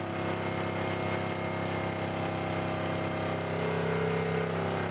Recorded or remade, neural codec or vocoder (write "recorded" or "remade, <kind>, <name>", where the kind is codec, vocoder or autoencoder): recorded